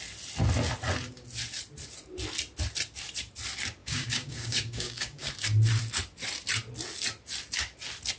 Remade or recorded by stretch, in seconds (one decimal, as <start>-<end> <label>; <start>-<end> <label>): 0.0-3.8 recorded; 3.8-5.3 remade; 5.3-8.2 recorded